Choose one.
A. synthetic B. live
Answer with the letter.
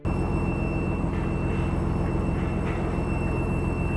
B